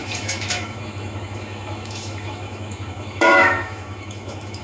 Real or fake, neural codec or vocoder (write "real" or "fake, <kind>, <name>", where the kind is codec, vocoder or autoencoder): fake, autoencoder, DAC-VAE